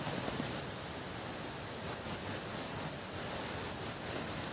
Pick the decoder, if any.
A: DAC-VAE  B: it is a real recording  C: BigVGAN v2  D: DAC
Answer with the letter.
B